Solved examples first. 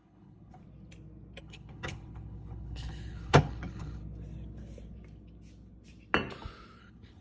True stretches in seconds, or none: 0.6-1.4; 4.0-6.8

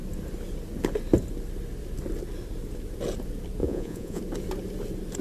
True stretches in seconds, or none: 0.0-3.6; 4.2-5.2